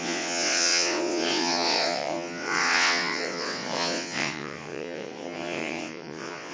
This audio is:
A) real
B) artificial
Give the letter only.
B